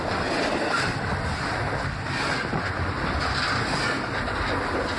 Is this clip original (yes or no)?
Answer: yes